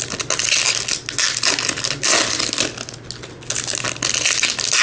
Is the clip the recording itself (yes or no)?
yes